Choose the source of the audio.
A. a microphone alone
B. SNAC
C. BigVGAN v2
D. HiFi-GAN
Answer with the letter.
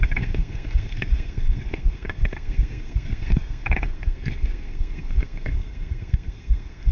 B